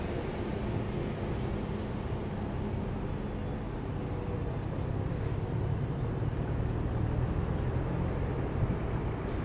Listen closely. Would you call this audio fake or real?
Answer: real